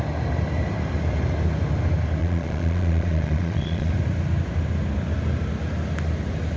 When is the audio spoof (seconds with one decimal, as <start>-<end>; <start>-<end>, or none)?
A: 2.2-3.9